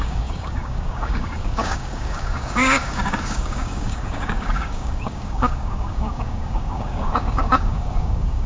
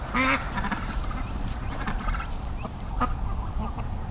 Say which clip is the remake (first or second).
first